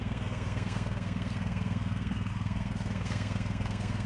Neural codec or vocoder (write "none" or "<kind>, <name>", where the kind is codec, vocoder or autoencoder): codec, SNAC